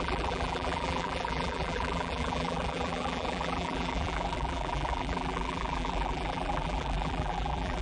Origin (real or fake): fake